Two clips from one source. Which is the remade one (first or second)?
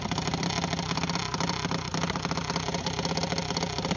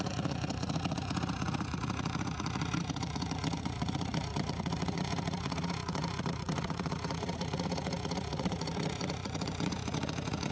second